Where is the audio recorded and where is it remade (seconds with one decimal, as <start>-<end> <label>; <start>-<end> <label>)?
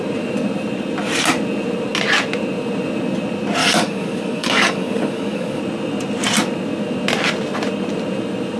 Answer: 0.0-3.6 recorded; 3.6-5.6 remade; 5.6-8.6 recorded